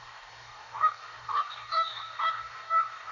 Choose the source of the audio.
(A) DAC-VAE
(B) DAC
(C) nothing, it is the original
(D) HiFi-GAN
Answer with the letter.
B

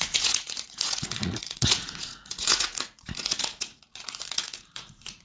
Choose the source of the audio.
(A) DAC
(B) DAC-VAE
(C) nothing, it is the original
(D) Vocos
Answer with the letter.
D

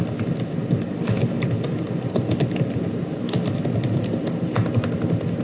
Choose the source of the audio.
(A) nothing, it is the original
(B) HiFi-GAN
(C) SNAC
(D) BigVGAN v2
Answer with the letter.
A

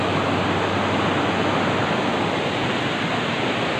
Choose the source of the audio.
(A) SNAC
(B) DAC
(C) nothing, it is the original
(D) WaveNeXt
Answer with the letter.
C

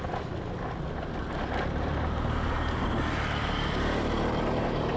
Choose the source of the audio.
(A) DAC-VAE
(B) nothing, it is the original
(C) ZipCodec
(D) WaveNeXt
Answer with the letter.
B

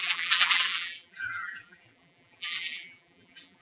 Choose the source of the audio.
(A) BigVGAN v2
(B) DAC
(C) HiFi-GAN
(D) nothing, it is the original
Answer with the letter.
A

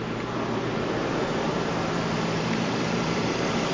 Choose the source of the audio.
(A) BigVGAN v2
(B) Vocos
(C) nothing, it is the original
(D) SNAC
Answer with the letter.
A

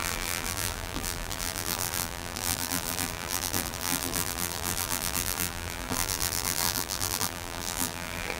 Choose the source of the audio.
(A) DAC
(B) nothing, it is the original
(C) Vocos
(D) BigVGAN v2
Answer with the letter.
D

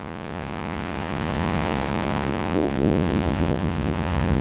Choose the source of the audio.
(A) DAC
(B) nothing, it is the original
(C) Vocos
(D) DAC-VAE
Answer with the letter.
C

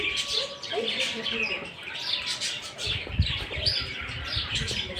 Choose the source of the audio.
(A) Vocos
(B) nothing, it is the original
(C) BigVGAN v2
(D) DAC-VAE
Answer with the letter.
C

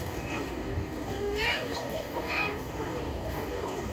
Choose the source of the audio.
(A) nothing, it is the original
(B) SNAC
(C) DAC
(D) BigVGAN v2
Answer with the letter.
C